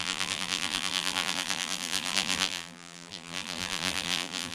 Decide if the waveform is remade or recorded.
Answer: remade